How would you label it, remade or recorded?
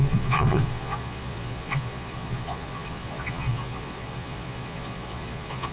remade